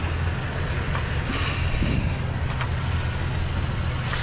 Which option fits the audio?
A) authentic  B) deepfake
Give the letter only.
A